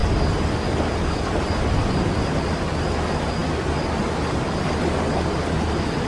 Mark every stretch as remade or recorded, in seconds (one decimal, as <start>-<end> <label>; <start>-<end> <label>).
0.0-6.1 recorded